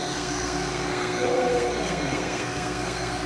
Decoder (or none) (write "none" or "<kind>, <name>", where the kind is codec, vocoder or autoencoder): codec, SNAC